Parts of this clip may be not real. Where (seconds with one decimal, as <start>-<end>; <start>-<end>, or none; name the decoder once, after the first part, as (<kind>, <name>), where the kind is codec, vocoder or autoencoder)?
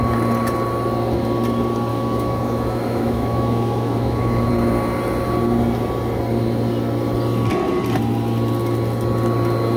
1.9-4.5 (autoencoder, DAC-VAE)